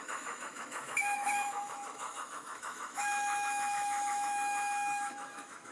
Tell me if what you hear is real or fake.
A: fake